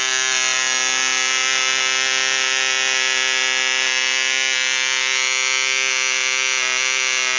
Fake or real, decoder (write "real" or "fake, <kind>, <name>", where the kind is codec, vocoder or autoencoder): real